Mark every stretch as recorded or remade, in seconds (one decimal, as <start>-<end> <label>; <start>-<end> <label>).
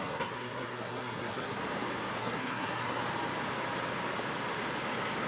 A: 0.0-1.6 remade; 1.6-2.2 recorded; 2.2-3.0 remade; 3.0-5.3 recorded